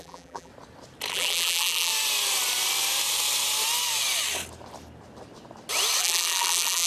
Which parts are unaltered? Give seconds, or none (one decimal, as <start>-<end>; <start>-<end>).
0.5-1.1; 1.9-6.0